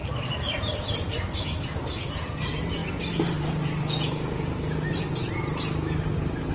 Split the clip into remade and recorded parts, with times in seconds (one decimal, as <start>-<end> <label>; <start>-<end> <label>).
0.0-1.3 remade; 1.3-6.5 recorded

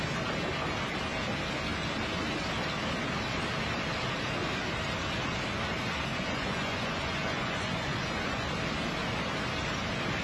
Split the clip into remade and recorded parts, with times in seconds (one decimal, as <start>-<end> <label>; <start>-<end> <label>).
0.0-6.1 recorded; 6.1-8.5 remade; 8.5-10.2 recorded

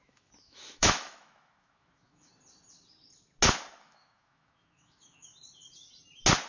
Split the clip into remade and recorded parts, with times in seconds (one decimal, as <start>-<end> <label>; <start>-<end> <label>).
0.0-2.3 remade; 2.3-3.8 recorded; 3.8-5.3 remade; 5.3-6.5 recorded

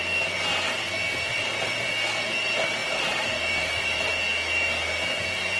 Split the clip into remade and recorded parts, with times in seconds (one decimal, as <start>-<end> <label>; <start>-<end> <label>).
0.0-1.3 recorded; 1.3-1.9 remade; 1.9-2.8 recorded; 2.8-4.1 remade; 4.1-5.6 recorded

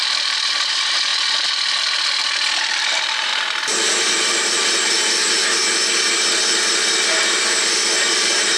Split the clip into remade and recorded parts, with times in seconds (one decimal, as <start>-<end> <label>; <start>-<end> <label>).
0.0-1.1 remade; 1.1-2.5 recorded; 2.5-3.3 remade; 3.3-4.0 recorded; 4.0-5.4 remade; 5.4-8.2 recorded; 8.2-8.6 remade

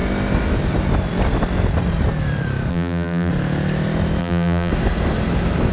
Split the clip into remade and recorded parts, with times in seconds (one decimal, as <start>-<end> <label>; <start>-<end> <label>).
0.0-2.7 recorded; 2.7-3.3 remade; 3.3-4.2 recorded; 4.2-4.7 remade; 4.7-5.7 recorded